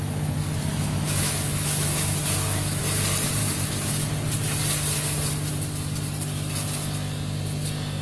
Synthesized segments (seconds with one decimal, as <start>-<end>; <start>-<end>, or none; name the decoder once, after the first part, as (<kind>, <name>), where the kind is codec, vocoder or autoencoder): 0.7-2.8 (autoencoder, DAC-VAE); 3.4-4.1